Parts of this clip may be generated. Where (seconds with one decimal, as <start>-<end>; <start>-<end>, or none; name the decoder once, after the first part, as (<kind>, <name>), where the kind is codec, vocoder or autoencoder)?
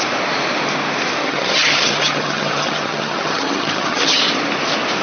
1.2-4.2 (vocoder, HiFi-GAN)